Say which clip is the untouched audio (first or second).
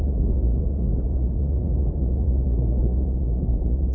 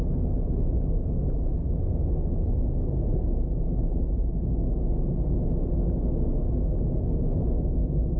second